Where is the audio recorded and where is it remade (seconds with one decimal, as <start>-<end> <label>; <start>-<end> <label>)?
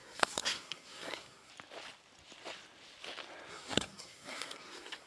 0.0-1.5 remade; 1.5-3.5 recorded; 3.5-5.1 remade